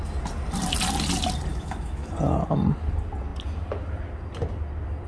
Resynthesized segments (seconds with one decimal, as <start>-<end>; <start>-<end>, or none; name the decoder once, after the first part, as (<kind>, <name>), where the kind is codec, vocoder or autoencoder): 1.5-2.1 (autoencoder, DAC-VAE)